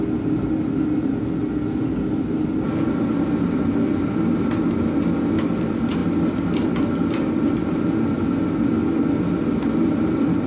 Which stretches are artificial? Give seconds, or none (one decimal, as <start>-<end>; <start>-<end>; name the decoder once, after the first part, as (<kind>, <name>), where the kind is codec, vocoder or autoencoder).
none